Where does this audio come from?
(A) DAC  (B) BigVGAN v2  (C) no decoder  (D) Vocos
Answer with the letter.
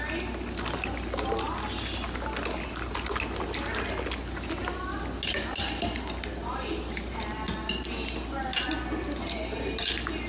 C